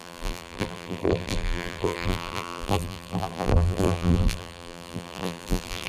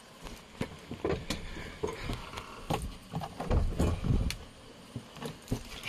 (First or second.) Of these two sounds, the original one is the second